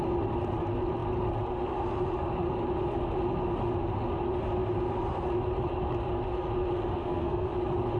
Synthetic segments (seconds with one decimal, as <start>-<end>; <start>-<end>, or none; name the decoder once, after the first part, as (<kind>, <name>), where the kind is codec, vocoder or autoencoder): 7.0-7.5 (codec, SNAC)